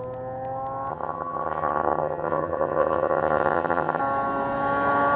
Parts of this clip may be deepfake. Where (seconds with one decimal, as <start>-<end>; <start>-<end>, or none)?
0.9-4.0